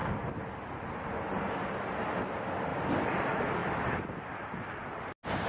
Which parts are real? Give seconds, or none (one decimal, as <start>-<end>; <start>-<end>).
0.0-5.5